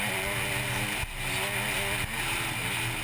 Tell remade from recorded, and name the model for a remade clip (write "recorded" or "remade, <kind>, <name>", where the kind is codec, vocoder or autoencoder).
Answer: recorded